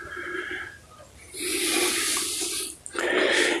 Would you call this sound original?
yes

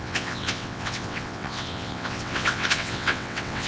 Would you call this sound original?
no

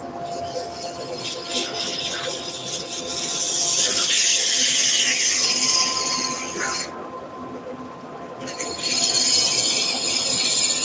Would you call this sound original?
yes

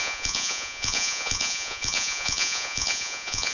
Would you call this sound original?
no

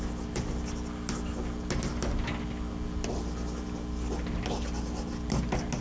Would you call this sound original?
yes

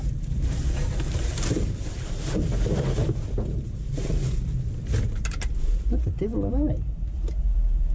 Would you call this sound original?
no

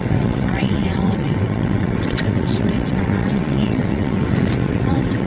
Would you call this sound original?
no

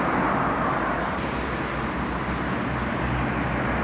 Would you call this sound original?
yes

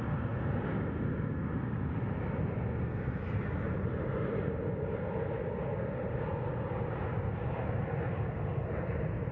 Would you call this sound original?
yes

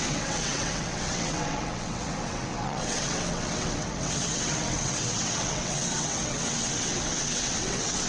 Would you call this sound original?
no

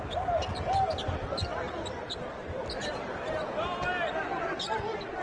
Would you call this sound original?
yes